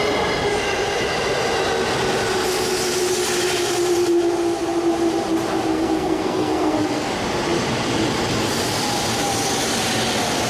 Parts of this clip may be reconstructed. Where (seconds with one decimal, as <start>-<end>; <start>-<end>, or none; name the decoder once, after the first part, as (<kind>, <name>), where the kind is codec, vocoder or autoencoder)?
5.7-7.1 (codec, SNAC)